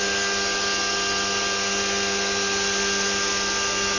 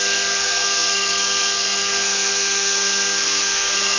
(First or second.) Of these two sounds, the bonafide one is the first